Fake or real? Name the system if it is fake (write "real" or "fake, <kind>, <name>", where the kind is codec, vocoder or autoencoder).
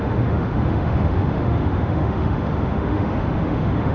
fake, autoencoder, DAC-VAE